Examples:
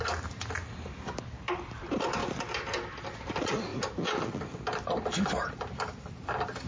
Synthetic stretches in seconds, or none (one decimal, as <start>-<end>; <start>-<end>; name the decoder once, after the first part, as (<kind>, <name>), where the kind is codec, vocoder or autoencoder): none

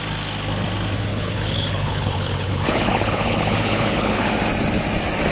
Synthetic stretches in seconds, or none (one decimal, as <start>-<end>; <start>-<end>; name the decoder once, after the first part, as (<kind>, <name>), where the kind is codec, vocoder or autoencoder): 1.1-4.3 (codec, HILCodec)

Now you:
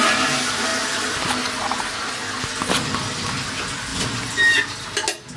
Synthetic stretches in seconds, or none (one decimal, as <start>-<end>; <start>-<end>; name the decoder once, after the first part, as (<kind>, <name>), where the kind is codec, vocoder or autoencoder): none